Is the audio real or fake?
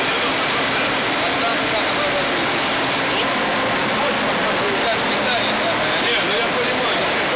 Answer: real